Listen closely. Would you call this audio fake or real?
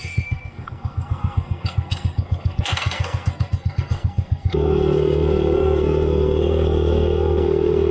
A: fake